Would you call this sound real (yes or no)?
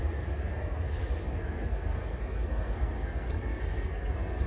no